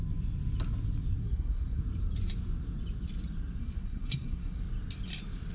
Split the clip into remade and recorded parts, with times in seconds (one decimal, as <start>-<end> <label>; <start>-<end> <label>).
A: 0.0-1.2 recorded; 1.2-1.8 remade; 1.8-3.6 recorded; 3.6-4.6 remade; 4.6-5.5 recorded